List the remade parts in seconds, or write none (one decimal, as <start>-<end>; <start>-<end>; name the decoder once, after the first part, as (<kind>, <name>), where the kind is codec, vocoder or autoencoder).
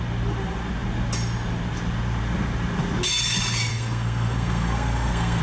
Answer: 3.7-5.4 (codec, SNAC)